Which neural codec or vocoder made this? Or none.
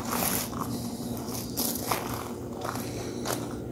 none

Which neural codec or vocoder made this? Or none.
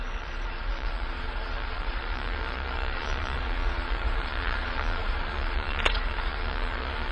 vocoder, Vocos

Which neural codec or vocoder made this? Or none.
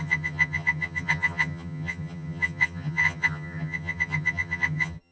vocoder, HiFi-GAN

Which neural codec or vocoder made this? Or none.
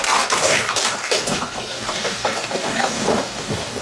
codec, DAC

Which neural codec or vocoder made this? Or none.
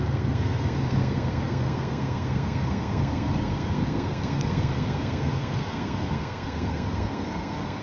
codec, SNAC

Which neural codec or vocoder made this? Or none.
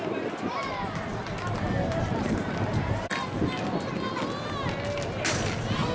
none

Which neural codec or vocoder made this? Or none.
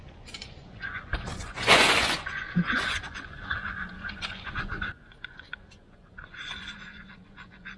vocoder, Vocos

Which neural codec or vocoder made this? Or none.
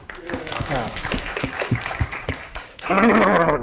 codec, DAC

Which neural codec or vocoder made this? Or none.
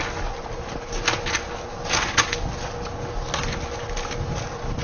none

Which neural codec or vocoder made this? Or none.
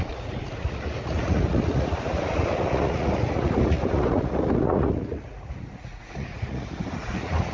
vocoder, Vocos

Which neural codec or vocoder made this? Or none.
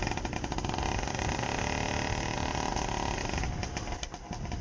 none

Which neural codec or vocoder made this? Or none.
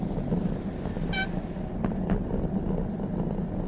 vocoder, BigVGAN v2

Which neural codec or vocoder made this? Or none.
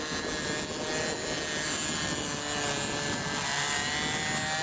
none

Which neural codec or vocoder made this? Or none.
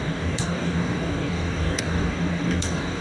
codec, DAC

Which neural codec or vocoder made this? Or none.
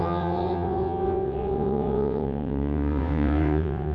vocoder, WaveNeXt